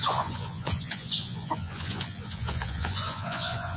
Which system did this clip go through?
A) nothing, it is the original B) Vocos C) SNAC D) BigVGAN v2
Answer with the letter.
B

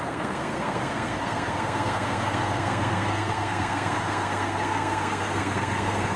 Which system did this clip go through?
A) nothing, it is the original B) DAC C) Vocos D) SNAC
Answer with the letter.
D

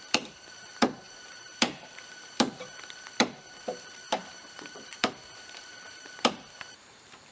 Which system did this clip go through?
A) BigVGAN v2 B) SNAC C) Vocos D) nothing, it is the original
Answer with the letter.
A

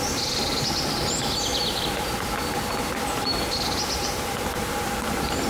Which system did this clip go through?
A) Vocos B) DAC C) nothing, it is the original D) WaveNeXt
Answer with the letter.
C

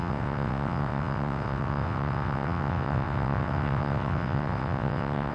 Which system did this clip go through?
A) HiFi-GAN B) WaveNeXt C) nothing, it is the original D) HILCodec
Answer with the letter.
B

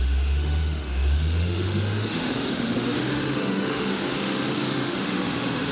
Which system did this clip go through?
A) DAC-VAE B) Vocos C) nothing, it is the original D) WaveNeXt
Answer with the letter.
A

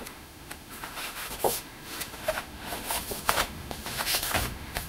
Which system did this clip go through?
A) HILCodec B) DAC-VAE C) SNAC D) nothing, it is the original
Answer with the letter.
B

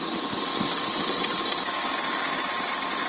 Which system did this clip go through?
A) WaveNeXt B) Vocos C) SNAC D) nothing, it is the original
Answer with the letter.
D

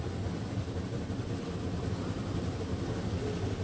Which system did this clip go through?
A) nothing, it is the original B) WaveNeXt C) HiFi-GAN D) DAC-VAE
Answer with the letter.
A